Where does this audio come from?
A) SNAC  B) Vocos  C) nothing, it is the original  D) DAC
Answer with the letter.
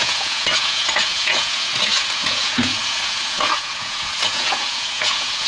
B